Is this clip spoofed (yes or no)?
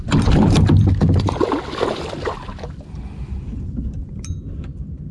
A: no